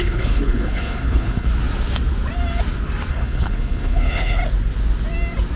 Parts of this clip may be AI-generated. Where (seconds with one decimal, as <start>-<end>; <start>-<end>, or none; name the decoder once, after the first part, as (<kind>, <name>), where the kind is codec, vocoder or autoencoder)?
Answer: 0.0-1.5 (codec, HILCodec); 3.1-4.4